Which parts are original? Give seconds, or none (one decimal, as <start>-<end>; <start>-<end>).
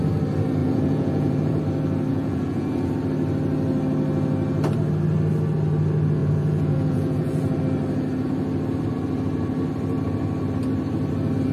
0.0-0.6; 1.6-2.1; 2.9-6.2; 7.6-11.5